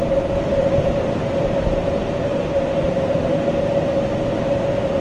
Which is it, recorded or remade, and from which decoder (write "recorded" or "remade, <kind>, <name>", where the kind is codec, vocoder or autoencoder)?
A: recorded